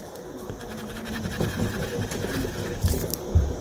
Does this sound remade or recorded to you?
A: remade